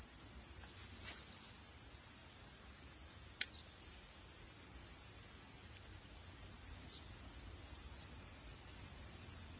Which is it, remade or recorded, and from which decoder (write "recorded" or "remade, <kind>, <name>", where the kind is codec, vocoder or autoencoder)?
recorded